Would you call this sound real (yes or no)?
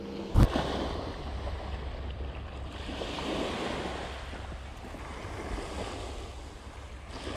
yes